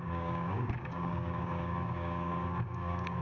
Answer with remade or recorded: remade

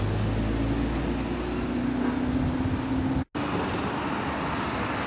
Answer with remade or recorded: recorded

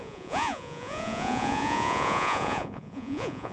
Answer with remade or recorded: remade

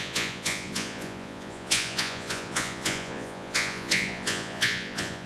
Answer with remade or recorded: remade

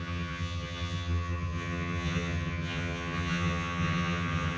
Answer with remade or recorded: remade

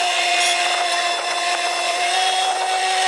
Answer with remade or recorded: remade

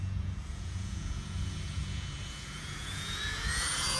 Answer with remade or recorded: remade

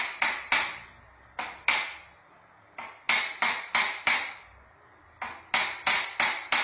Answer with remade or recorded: recorded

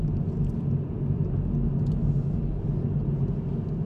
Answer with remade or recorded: recorded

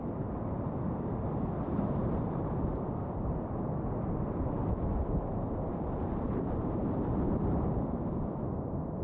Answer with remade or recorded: remade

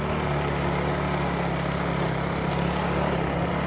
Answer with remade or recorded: recorded